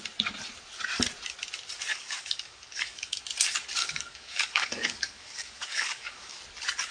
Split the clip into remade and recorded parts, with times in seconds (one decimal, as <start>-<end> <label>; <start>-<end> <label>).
0.0-1.9 recorded; 1.9-3.2 remade; 3.2-3.8 recorded; 3.8-6.4 remade; 6.4-6.9 recorded